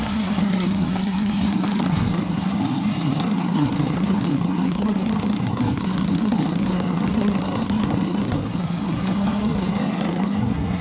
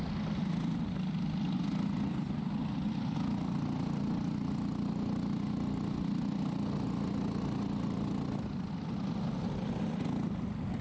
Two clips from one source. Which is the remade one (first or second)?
first